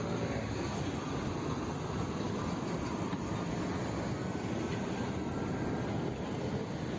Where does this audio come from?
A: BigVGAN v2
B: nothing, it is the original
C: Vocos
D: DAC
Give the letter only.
B